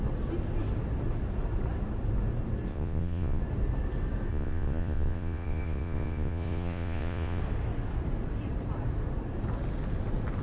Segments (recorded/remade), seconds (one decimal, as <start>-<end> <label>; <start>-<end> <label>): 0.0-2.7 recorded; 2.7-3.4 remade; 3.4-4.3 recorded; 4.3-7.4 remade; 7.4-10.4 recorded